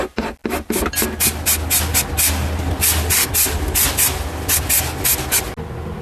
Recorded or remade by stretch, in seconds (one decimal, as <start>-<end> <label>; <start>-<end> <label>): 0.0-6.0 recorded